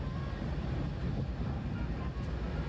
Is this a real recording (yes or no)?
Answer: yes